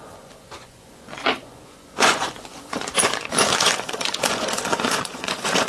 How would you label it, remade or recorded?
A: remade